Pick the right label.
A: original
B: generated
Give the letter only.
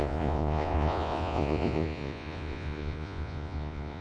B